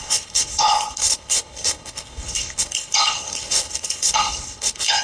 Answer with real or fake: fake